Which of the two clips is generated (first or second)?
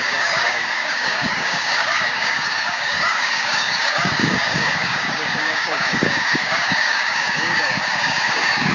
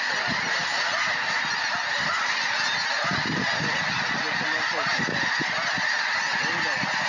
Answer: first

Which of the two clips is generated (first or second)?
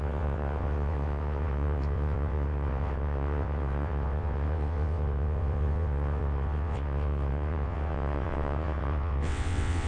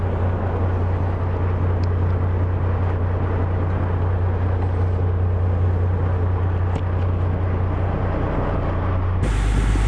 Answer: first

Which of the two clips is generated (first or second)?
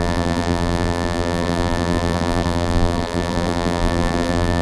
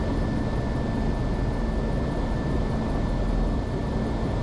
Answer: first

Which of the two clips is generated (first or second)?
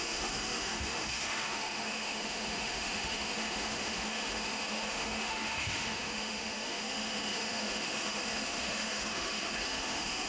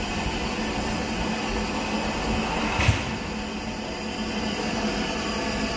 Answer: first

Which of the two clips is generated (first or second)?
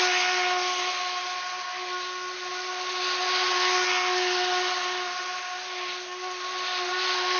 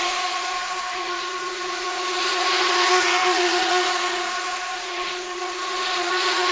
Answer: second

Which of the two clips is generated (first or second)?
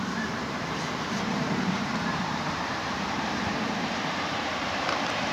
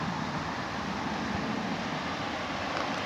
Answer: first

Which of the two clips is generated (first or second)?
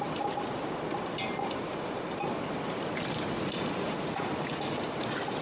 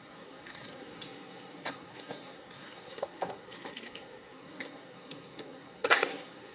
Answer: second